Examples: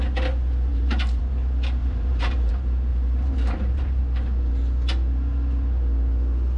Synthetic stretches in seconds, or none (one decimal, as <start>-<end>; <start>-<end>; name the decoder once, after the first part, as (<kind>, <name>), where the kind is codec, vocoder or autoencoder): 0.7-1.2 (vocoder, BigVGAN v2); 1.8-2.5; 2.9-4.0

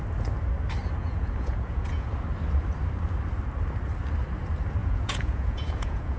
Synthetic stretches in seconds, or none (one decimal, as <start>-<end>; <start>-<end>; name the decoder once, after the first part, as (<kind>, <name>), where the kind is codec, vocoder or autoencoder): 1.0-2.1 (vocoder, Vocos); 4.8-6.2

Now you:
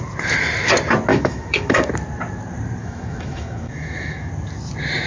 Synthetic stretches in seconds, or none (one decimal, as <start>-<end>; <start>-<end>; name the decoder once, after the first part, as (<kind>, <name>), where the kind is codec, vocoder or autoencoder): 1.1-1.9 (autoencoder, DAC-VAE); 2.8-4.3

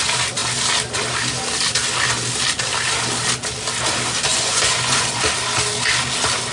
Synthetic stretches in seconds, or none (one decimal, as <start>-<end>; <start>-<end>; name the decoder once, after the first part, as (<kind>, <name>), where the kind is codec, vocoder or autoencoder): 4.3-5.2 (vocoder, Vocos)

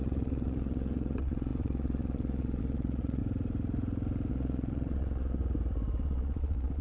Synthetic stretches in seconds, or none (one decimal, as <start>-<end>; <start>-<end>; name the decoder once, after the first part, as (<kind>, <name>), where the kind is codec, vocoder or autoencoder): 0.0-3.2 (vocoder, Vocos); 4.3-5.4; 6.0-6.8

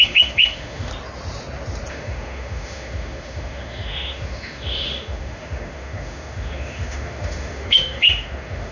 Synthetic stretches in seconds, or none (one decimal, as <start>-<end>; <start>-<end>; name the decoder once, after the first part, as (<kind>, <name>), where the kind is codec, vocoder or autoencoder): 0.0-0.9 (autoencoder, DAC-VAE); 1.9-8.7